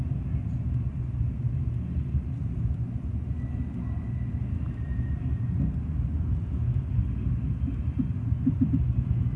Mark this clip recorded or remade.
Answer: recorded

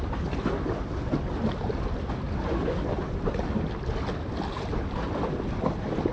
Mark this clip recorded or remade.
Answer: recorded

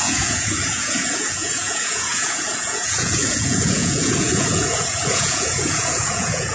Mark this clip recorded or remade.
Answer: remade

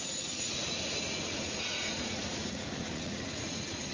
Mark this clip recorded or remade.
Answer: remade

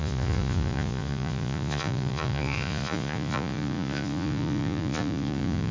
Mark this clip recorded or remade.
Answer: remade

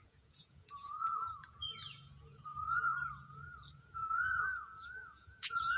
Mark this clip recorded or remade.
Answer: remade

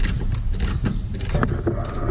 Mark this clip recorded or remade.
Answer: recorded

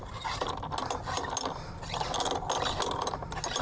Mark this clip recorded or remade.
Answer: recorded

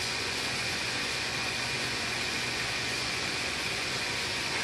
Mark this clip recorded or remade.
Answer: remade